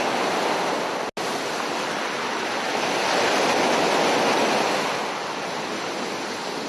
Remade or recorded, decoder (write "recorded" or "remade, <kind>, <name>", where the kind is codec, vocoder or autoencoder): recorded